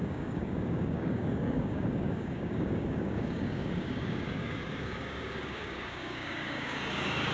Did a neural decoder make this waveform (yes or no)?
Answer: yes